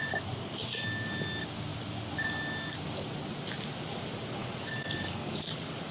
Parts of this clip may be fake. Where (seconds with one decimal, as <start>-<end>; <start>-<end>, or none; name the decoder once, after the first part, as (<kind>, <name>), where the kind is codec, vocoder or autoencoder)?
4.4-5.4 (codec, DAC)